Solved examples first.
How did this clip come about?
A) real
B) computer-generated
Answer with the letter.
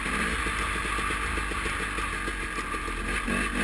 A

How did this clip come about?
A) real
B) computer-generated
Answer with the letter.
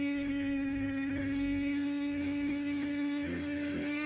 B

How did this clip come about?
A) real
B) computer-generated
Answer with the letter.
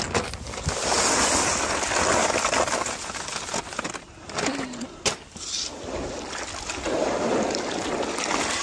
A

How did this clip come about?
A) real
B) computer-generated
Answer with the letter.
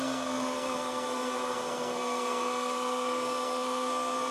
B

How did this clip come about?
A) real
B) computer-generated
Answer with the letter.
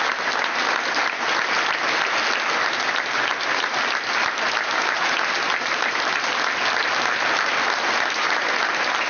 A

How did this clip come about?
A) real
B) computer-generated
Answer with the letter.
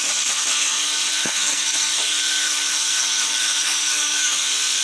B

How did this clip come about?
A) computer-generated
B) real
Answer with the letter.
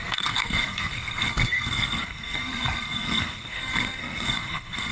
A